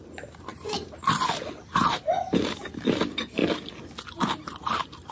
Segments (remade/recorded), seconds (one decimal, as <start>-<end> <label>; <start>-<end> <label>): 0.0-3.4 remade; 3.4-4.1 recorded; 4.1-5.1 remade